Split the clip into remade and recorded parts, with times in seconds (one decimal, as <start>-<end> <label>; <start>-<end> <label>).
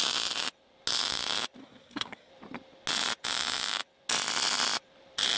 0.0-1.6 recorded; 1.6-2.3 remade; 2.3-5.4 recorded